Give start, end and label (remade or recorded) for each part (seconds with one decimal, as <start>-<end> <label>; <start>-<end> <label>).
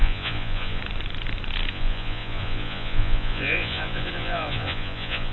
0.0-0.8 remade; 0.8-1.7 recorded; 1.7-5.3 remade